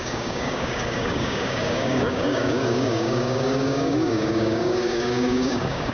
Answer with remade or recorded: remade